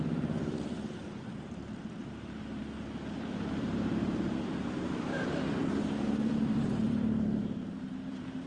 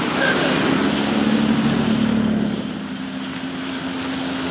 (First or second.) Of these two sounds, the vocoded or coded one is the first